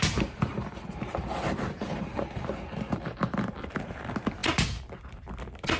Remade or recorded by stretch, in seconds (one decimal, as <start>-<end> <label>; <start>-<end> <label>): 0.0-0.5 recorded; 0.5-4.0 remade; 4.0-5.8 recorded

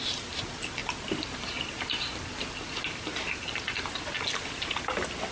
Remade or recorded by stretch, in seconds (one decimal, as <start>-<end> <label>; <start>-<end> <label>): 0.0-5.3 recorded

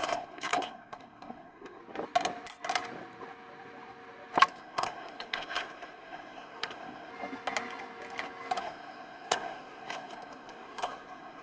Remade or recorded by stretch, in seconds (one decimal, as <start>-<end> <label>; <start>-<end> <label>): 0.0-1.8 remade; 1.8-4.5 recorded; 4.5-7.1 remade; 7.1-8.6 recorded; 8.6-11.4 remade

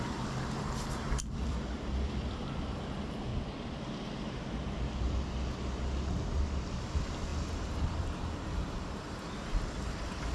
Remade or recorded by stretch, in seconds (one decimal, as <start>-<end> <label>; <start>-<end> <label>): 0.0-3.3 remade; 3.3-6.8 recorded; 6.8-10.3 remade

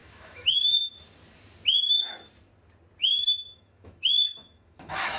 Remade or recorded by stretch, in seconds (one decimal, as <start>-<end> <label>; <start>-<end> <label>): 0.0-0.9 remade; 0.9-3.0 recorded; 3.0-5.2 remade

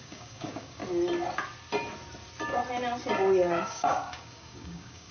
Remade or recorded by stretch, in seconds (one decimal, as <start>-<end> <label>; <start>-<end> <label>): 0.0-0.8 remade; 0.8-3.6 recorded; 3.6-5.1 remade

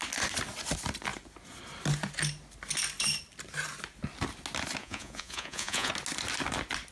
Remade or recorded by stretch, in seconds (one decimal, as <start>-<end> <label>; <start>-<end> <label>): 0.0-4.8 recorded; 4.8-5.9 remade; 5.9-6.9 recorded

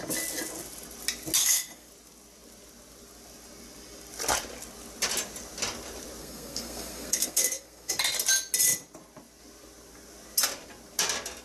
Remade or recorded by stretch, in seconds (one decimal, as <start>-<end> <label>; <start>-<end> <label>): 0.0-1.4 recorded; 1.4-1.9 remade; 1.9-6.2 recorded; 6.2-7.9 remade; 7.9-11.4 recorded